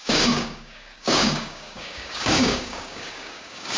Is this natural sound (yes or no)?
no